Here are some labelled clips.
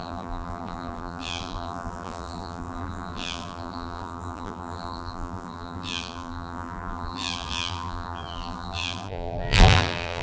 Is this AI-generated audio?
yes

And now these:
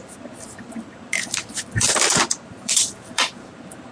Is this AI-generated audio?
yes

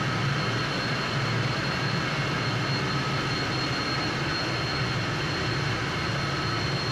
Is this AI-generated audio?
no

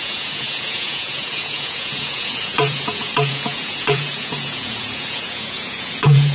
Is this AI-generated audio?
yes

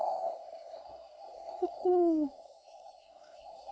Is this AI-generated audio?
yes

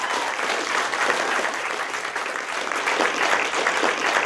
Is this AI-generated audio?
no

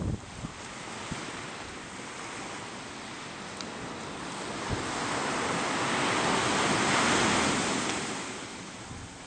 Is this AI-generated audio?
no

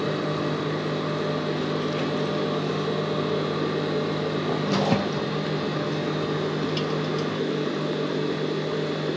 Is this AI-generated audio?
no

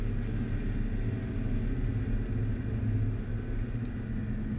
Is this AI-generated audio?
no